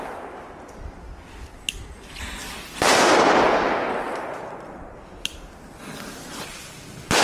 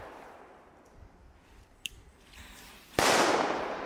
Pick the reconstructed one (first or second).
second